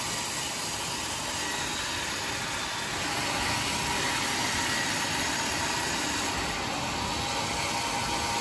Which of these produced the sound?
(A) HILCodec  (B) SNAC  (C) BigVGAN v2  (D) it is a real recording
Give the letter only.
D